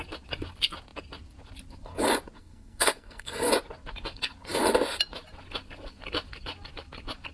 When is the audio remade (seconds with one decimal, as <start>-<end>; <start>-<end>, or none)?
2.4-3.5